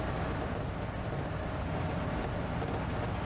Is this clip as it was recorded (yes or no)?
yes